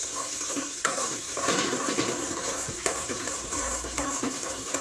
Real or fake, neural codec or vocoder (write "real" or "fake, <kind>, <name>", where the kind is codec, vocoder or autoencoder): fake, codec, SNAC